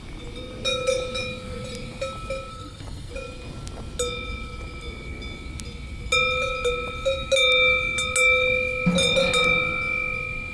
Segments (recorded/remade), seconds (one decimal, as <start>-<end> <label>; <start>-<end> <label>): 0.0-2.5 recorded; 2.5-3.1 remade; 3.1-10.5 recorded